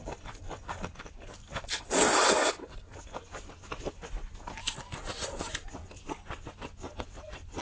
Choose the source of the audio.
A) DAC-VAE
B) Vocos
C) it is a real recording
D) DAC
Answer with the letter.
C